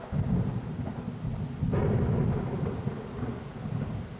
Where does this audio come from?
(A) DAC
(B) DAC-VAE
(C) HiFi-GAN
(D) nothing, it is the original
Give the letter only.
D